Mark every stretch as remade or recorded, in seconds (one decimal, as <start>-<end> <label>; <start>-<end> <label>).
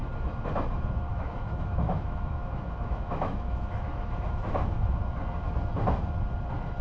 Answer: 0.0-1.1 recorded; 1.1-5.0 remade; 5.0-6.8 recorded